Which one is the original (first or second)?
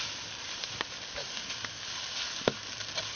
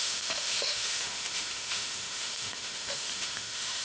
first